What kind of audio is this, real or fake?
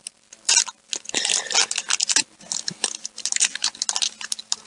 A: real